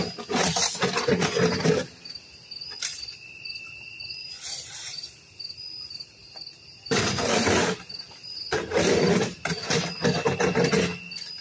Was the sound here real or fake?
real